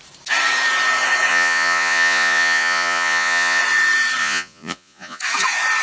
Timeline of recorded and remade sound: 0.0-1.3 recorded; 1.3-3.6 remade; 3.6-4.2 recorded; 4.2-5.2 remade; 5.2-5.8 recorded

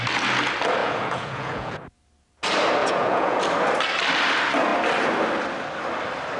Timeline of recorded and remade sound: 0.0-0.8 recorded; 0.8-1.8 remade; 1.8-2.8 recorded; 2.8-3.4 remade; 3.4-6.4 recorded

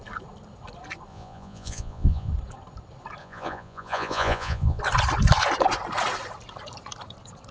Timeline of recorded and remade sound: 0.0-1.1 recorded; 1.1-2.3 remade; 2.3-3.2 recorded; 3.2-4.8 remade; 4.8-7.5 recorded

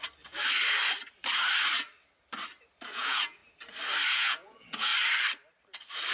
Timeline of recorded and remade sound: 0.0-2.9 recorded; 2.9-3.4 remade; 3.4-4.1 recorded; 4.1-4.9 remade; 4.9-6.1 recorded

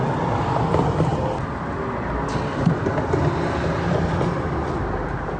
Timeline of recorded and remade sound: 0.0-5.4 recorded

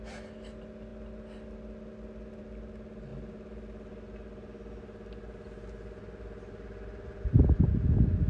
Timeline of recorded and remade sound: 0.0-8.3 recorded

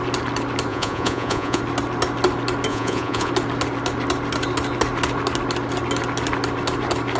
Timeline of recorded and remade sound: 0.0-0.7 recorded; 0.7-1.6 remade; 1.6-2.7 recorded; 2.7-3.3 remade; 3.3-7.2 recorded